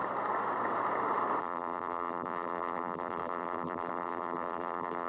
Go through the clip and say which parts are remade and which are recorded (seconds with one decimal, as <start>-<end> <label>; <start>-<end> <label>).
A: 0.0-1.4 recorded; 1.4-5.1 remade